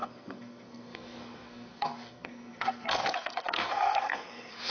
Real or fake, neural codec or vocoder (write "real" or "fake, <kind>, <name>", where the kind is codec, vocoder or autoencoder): fake, codec, SNAC